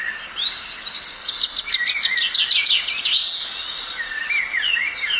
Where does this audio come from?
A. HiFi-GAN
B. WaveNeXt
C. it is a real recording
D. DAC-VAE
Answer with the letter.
C